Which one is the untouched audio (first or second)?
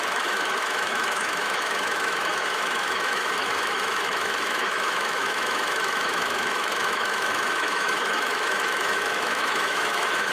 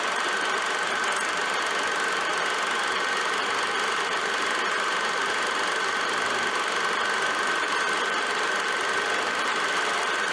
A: second